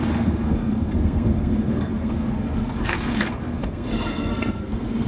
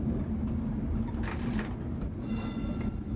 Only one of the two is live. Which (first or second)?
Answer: second